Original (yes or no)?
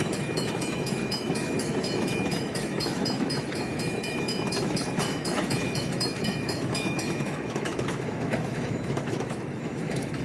no